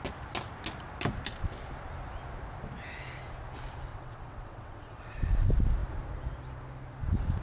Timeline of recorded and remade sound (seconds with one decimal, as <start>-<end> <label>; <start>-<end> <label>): 0.0-3.9 recorded; 3.9-5.2 remade; 5.2-7.4 recorded